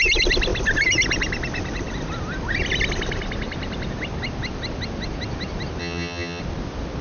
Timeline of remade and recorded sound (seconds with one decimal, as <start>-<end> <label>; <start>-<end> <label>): 0.0-5.8 recorded; 5.8-6.4 remade; 6.4-7.0 recorded